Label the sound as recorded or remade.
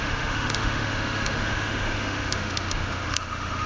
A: remade